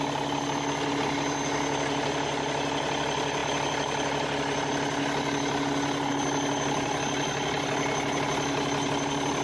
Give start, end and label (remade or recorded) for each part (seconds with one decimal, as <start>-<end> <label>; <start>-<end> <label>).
0.0-9.4 recorded